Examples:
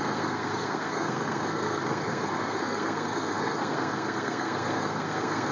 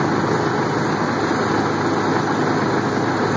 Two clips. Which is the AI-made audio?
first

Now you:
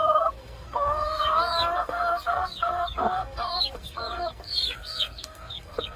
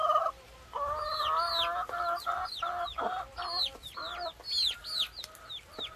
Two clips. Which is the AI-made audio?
first